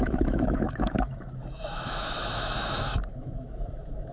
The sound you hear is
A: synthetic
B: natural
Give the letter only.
A